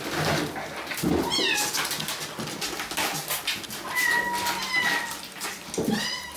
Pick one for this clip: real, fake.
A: real